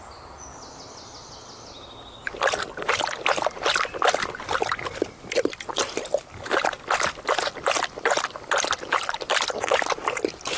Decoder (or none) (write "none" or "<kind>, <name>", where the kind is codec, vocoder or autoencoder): none